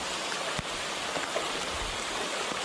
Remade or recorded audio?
recorded